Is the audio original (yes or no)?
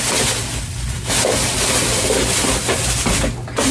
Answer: yes